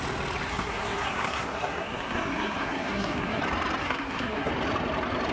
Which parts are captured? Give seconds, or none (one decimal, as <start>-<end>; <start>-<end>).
0.0-0.5; 3.4-3.8; 4.5-5.3